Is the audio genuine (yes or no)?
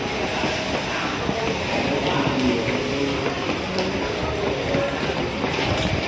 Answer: yes